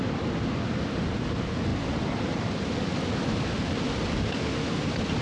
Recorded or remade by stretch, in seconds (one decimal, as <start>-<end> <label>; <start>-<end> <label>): 0.0-5.2 recorded